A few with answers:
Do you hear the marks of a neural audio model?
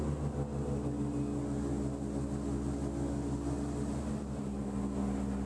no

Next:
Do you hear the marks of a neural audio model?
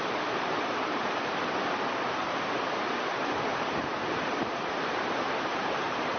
yes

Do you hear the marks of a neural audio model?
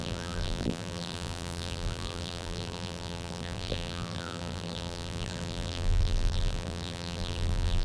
yes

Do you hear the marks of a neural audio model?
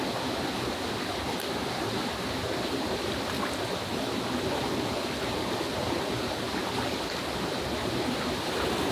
no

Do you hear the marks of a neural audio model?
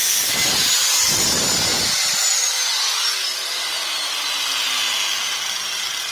no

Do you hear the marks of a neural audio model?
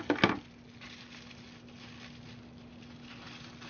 no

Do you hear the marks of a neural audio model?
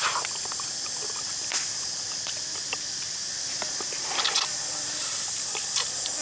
yes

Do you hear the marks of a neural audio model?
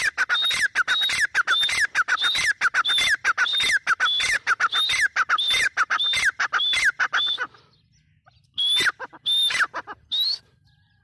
no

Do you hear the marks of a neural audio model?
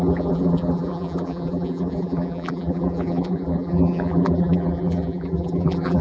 yes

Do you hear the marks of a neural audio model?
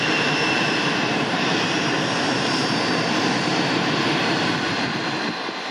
yes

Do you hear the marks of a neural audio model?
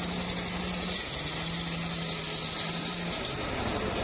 no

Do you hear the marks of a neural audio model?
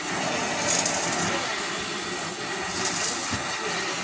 no